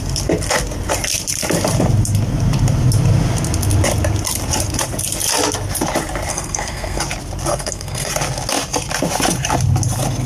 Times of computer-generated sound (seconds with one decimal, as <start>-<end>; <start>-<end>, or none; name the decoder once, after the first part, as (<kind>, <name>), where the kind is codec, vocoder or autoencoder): 6.3-7.0 (codec, SNAC); 7.5-8.1